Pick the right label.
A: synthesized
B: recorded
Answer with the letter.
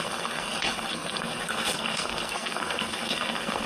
A